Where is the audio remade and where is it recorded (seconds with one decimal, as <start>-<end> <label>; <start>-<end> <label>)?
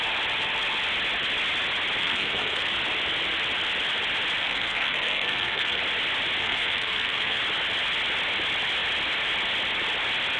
0.0-2.0 recorded; 2.0-2.7 remade; 2.7-4.4 recorded; 4.4-5.8 remade; 5.8-6.4 recorded; 6.4-7.4 remade; 7.4-10.4 recorded